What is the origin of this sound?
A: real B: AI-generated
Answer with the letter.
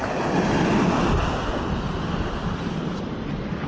B